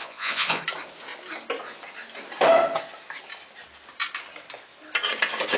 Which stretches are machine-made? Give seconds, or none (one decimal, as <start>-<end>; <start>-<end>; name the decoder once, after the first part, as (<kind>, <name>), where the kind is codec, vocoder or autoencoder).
0.0-0.6 (vocoder, Vocos)